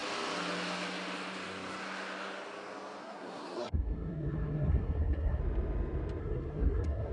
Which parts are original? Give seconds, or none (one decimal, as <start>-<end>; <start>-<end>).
0.0-3.0; 5.4-6.2